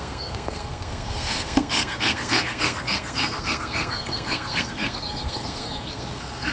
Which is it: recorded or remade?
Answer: remade